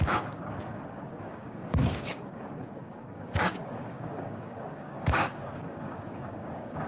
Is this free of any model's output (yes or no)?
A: no